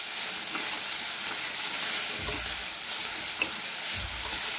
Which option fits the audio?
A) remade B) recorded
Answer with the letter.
B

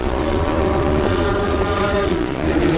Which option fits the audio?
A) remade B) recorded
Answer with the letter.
A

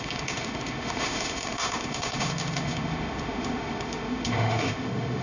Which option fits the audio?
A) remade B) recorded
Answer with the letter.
A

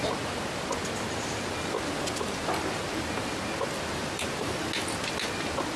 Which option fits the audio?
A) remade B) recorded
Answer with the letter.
B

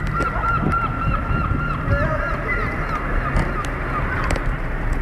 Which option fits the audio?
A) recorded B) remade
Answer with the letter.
A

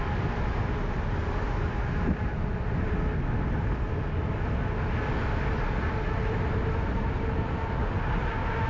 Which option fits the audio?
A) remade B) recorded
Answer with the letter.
B